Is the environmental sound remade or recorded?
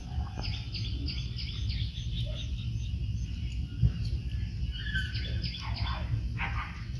recorded